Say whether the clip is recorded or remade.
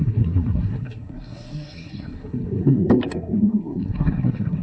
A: remade